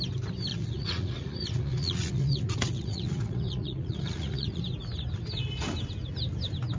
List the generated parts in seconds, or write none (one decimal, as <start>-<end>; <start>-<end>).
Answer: 0.5-4.6